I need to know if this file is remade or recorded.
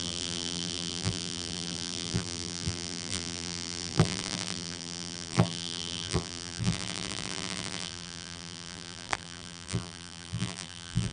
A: remade